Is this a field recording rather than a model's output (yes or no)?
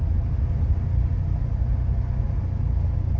yes